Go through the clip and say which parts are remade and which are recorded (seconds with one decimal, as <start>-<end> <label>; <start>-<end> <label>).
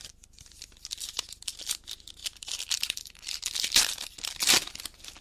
0.0-2.2 recorded; 2.2-3.4 remade; 3.4-5.2 recorded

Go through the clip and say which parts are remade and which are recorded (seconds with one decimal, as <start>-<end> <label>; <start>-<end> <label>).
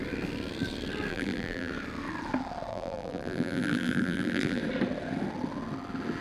0.0-1.1 recorded; 1.1-1.7 remade; 1.7-2.7 recorded; 2.7-4.6 remade; 4.6-6.2 recorded